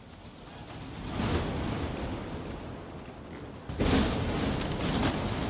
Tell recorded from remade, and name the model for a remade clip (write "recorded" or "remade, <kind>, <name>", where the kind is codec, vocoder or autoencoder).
recorded